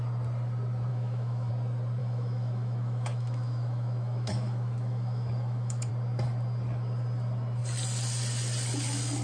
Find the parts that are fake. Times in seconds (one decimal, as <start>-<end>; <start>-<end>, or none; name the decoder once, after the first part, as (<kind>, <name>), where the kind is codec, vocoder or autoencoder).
0.9-1.5 (autoencoder, DAC-VAE); 2.0-5.9